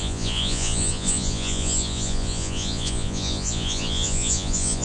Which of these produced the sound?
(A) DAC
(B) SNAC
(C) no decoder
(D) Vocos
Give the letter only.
D